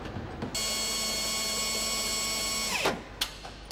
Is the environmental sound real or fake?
real